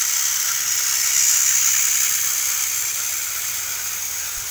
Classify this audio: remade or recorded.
recorded